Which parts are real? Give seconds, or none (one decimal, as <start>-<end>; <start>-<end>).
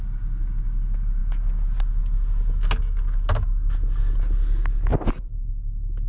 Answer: 0.0-6.1